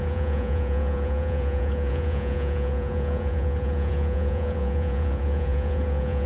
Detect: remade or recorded remade